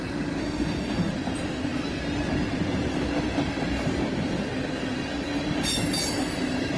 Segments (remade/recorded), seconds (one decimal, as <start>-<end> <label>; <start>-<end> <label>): 0.0-0.4 recorded; 0.4-1.1 remade; 1.1-6.8 recorded

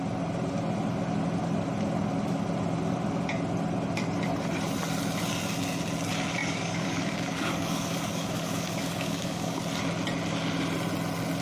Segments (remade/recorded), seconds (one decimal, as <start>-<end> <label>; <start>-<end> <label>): 0.0-6.4 recorded; 6.4-9.6 remade; 9.6-11.4 recorded

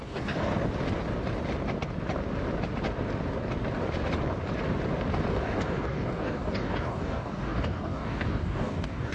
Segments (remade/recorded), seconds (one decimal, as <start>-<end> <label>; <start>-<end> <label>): 0.0-0.5 remade; 0.5-5.3 recorded; 5.3-9.1 remade

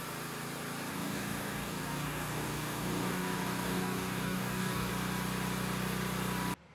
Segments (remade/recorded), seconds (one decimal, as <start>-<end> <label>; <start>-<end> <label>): 0.0-0.9 recorded; 0.9-4.9 remade; 4.9-6.7 recorded

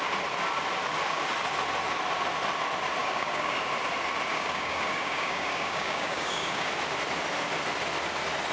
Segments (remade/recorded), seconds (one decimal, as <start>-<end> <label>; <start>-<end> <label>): 0.0-3.0 recorded; 3.0-3.6 remade; 3.6-4.3 recorded; 4.3-6.7 remade; 6.7-8.5 recorded

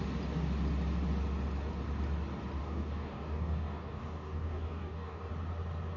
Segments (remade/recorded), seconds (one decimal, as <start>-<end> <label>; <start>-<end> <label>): 0.0-2.6 recorded; 2.6-5.3 remade; 5.3-6.0 recorded

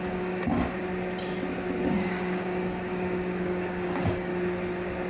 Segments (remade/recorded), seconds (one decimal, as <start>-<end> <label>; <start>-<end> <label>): 0.0-0.5 remade; 0.5-1.8 recorded; 1.8-4.3 remade; 4.3-5.1 recorded